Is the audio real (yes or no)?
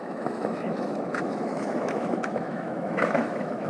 no